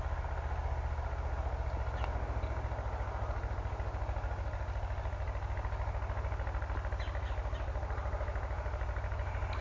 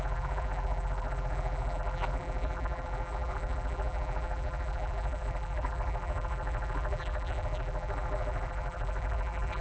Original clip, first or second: first